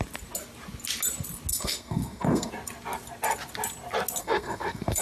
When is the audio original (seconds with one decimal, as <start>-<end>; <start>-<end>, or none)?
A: 0.0-1.5; 2.5-4.2